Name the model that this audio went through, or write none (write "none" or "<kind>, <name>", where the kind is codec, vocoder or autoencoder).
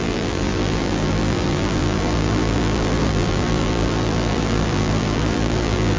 vocoder, BigVGAN v2